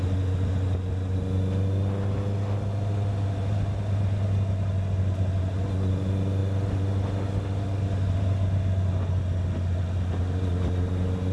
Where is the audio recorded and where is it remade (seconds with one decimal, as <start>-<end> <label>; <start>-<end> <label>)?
0.0-11.3 recorded